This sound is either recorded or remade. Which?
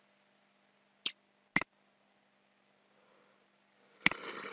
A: recorded